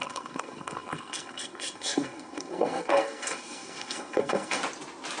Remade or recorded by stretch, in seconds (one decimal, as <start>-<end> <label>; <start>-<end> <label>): 0.0-4.6 remade; 4.6-5.2 recorded